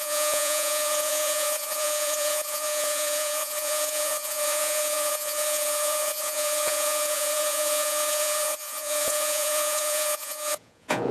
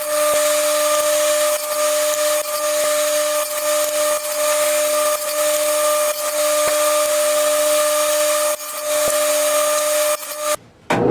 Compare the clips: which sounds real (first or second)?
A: second